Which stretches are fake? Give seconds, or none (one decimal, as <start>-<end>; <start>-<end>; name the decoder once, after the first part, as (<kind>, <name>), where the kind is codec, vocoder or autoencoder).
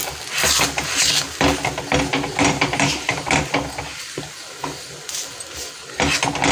2.1-3.2 (vocoder, BigVGAN v2)